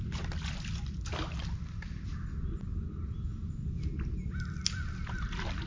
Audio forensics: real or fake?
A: real